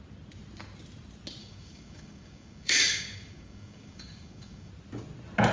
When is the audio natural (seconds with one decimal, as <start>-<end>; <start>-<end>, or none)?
0.0-1.4; 4.7-5.5